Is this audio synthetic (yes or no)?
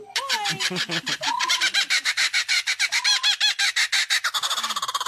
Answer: no